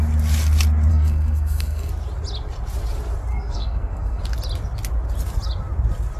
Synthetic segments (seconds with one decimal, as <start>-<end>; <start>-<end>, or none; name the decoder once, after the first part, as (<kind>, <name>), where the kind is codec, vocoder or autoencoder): 0.9-1.9 (codec, SNAC); 3.3-4.2